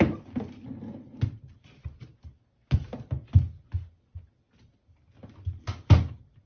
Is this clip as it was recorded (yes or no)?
yes